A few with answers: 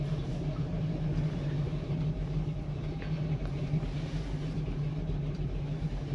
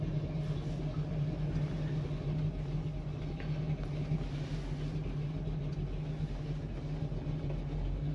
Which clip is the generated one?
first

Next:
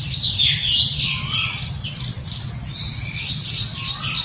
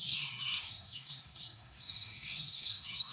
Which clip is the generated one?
second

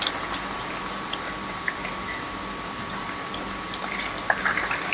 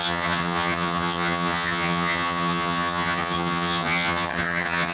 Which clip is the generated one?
second